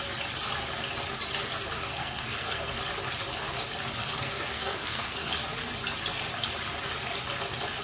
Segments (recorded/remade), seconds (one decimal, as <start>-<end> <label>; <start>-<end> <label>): 0.0-1.8 recorded; 1.8-2.8 remade; 2.8-4.0 recorded; 4.0-5.3 remade; 5.3-7.8 recorded